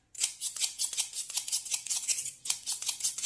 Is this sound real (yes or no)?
no